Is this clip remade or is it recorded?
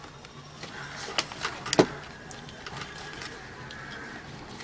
recorded